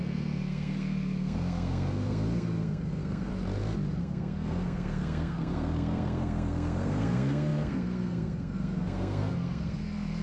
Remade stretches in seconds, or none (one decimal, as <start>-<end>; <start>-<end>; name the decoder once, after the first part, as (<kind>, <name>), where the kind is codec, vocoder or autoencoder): 0.0-3.3 (codec, SNAC); 4.0-10.2